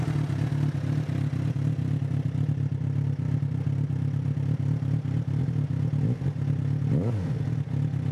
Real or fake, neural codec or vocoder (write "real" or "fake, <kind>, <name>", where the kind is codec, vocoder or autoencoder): real